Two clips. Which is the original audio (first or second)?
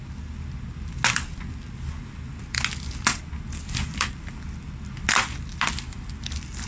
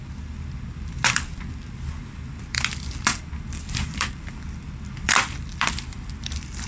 first